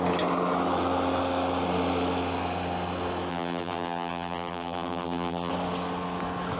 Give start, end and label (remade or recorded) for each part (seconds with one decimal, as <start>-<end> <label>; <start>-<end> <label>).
0.0-3.3 recorded; 3.3-5.5 remade; 5.5-6.6 recorded